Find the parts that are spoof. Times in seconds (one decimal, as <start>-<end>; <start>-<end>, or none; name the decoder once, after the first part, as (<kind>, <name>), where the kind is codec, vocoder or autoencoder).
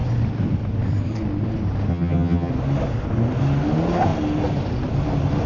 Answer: 1.9-2.5 (vocoder, HiFi-GAN)